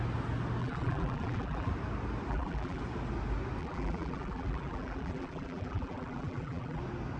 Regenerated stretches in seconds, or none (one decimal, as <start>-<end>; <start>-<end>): 0.6-1.7; 2.3-2.8; 3.6-6.8